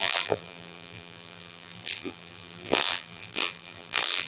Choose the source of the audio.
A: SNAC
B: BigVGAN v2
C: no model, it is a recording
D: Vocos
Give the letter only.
B